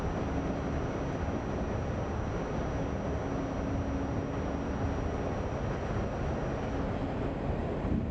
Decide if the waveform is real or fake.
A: real